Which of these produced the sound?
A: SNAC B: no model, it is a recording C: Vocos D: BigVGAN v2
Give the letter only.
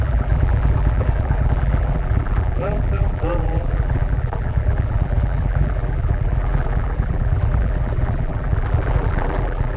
D